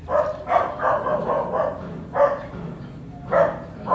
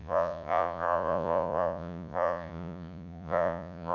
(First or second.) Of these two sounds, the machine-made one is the second